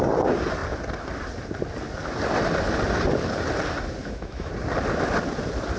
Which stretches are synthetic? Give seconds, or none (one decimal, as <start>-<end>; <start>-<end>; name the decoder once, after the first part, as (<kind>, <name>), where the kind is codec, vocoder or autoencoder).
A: 4.0-4.5 (autoencoder, DAC-VAE)